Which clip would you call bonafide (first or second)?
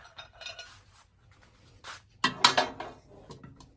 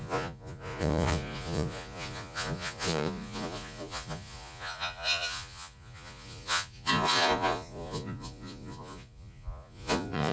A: first